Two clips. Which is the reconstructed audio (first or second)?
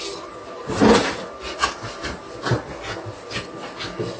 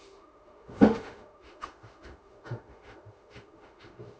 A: second